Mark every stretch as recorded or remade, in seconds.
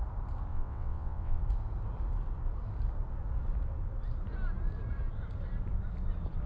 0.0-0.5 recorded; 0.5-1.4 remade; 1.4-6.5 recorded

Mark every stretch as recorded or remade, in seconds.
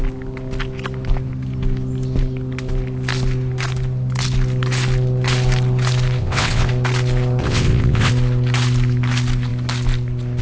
0.0-6.2 recorded; 6.2-6.7 remade; 6.7-7.4 recorded; 7.4-8.1 remade; 8.1-10.4 recorded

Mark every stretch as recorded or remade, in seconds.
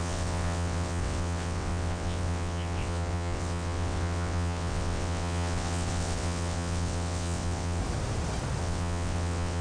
0.0-7.8 remade; 7.8-8.6 recorded; 8.6-9.6 remade